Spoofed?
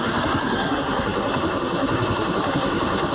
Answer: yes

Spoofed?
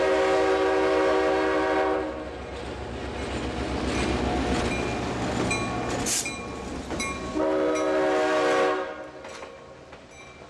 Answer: no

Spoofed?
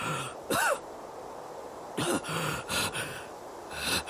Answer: yes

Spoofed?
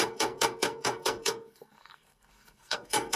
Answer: yes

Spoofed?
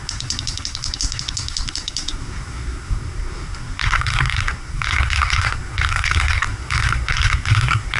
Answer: yes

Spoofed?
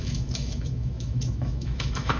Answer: yes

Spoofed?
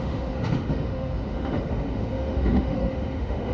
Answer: yes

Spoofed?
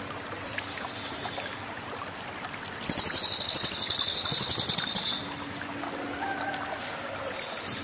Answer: no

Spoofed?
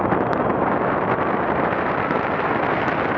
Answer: no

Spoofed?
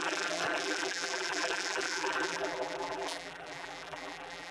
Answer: yes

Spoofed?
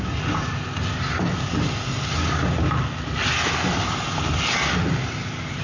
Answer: no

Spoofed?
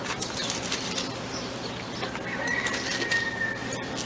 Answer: no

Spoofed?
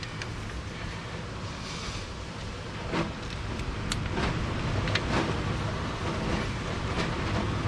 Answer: no